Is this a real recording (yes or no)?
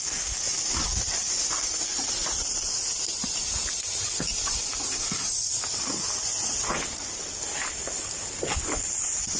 yes